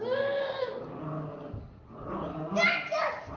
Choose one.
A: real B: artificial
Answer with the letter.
A